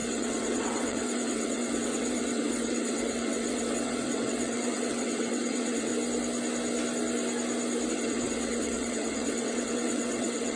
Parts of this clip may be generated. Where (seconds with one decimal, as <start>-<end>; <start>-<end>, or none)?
0.0-5.9; 7.9-10.6